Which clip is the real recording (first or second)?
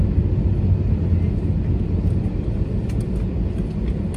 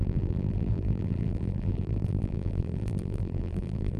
first